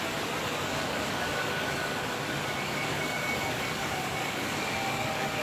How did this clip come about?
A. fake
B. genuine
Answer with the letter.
A